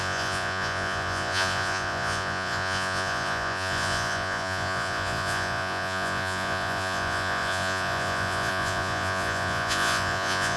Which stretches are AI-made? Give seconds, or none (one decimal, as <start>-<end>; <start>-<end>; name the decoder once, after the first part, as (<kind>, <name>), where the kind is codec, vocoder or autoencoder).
0.0-10.6 (vocoder, Vocos)